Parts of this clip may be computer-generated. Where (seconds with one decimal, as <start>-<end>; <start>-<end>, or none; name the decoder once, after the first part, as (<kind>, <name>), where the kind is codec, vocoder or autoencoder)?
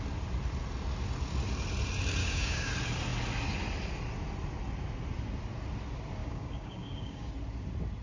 2.2-2.7 (codec, DAC); 6.2-7.3